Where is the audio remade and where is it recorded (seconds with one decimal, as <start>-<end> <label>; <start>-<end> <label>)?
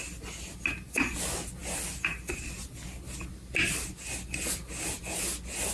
0.0-5.7 recorded